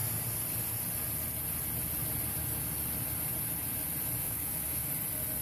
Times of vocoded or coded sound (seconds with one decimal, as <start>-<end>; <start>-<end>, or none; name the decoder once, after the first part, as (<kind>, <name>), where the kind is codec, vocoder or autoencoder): 4.2-4.9 (autoencoder, DAC-VAE)